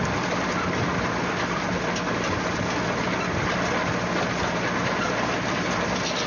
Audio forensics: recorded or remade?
recorded